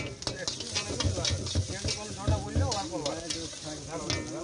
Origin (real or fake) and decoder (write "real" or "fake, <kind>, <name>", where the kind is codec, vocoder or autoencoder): real